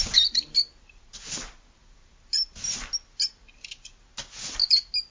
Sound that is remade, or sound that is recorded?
recorded